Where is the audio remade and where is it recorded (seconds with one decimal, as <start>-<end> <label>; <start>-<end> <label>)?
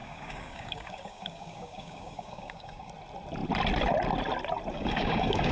0.0-2.9 remade; 2.9-4.7 recorded; 4.7-5.5 remade